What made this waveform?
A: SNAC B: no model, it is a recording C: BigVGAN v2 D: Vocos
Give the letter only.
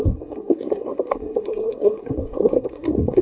A